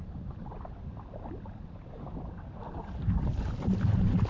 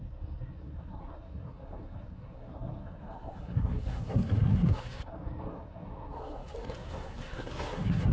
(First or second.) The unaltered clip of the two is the first